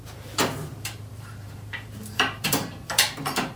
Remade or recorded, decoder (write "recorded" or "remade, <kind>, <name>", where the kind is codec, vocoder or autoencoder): remade, vocoder, BigVGAN v2